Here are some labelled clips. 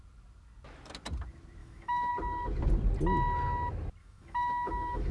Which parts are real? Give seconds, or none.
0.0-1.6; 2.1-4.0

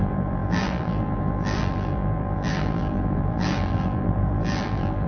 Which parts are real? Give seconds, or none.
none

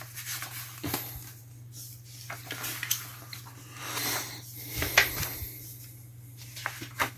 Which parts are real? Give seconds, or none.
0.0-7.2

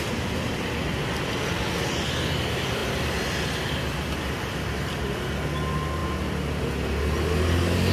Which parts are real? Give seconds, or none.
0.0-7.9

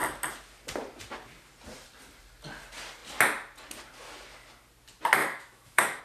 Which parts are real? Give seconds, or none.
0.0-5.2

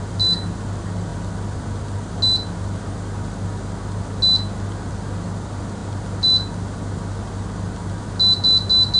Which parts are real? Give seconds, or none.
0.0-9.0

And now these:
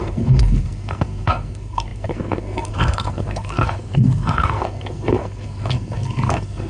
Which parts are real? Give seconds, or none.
none

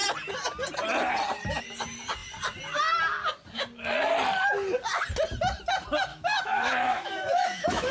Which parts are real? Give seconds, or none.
0.0-6.1